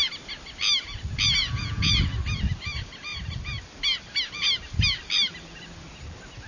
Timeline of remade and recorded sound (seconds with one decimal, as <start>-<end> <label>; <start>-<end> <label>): 0.0-1.4 recorded; 1.4-2.1 remade; 2.1-6.5 recorded